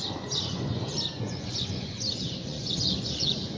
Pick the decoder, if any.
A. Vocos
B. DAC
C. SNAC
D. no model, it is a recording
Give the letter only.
A